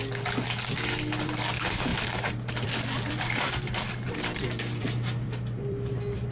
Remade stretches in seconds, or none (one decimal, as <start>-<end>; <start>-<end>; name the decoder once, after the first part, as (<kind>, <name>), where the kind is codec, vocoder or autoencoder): 0.7-6.3 (vocoder, BigVGAN v2)